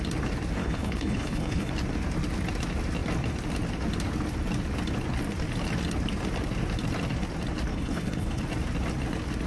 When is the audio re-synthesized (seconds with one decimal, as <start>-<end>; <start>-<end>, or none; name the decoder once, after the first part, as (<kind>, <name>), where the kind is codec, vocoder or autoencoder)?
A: 0.6-1.7 (codec, HILCodec); 7.7-8.4